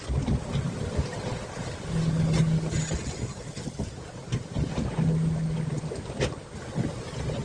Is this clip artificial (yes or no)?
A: no